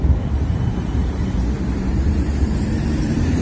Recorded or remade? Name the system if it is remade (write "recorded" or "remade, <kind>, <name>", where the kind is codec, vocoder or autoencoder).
remade, vocoder, BigVGAN v2